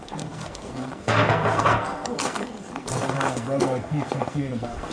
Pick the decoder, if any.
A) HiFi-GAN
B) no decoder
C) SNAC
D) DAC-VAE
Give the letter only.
C